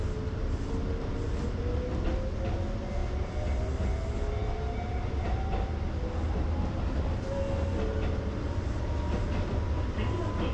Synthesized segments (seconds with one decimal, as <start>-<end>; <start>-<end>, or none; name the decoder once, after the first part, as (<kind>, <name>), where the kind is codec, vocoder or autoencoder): none